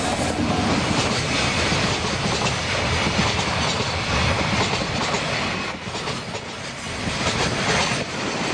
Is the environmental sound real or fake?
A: real